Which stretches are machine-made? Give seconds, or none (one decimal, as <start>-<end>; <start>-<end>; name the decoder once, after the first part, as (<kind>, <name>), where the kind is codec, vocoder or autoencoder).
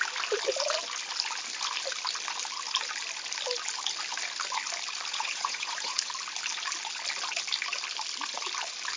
5.1-6.1 (vocoder, Vocos)